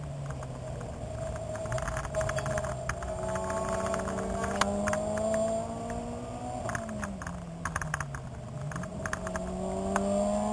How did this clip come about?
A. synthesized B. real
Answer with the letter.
B